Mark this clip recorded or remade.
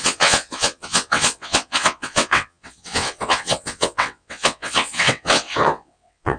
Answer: remade